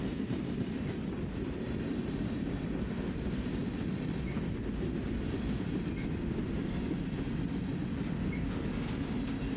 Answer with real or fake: real